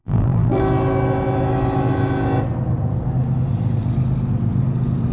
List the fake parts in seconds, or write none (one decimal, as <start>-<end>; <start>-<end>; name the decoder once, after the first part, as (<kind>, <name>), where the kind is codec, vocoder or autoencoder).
0.0-0.6 (vocoder, BigVGAN v2)